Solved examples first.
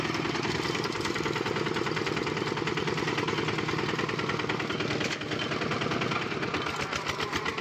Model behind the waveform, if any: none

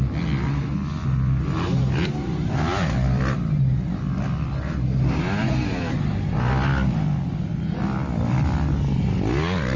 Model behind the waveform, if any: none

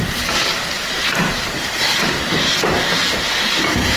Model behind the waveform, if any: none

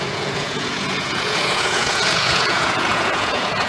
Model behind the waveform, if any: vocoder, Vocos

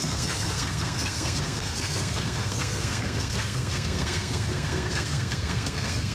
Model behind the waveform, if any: codec, SNAC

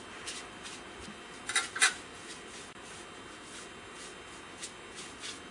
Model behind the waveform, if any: none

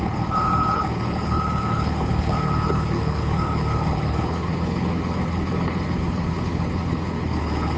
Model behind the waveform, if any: codec, HILCodec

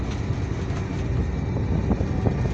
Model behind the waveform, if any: none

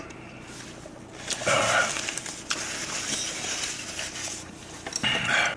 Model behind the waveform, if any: none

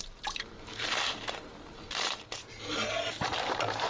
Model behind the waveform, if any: vocoder, BigVGAN v2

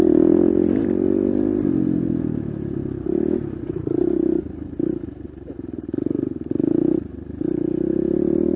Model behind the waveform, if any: none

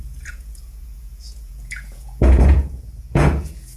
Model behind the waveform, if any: vocoder, Vocos